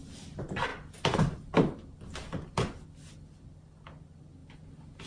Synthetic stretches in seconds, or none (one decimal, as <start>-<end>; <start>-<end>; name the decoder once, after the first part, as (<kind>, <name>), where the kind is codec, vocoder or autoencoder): none